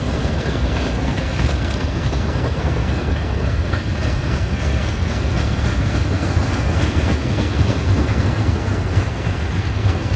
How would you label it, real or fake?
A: fake